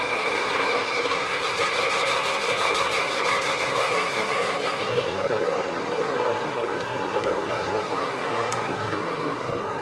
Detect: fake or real fake